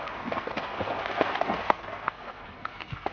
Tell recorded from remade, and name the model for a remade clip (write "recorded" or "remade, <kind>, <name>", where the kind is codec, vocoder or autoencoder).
remade, codec, SNAC